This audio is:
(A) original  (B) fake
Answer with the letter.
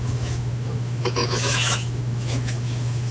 B